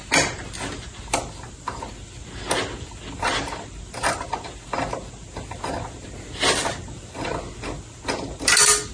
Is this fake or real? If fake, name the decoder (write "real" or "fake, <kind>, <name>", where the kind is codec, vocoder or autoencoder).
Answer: real